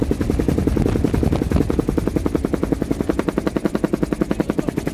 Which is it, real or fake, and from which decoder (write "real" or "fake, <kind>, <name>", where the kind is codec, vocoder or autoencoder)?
real